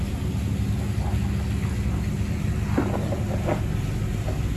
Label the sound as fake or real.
real